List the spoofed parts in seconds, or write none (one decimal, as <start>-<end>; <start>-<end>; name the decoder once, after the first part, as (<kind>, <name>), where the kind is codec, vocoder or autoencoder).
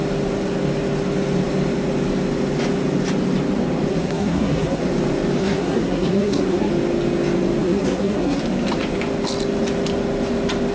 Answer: 3.9-4.8 (codec, SNAC); 5.4-6.7; 7.6-8.4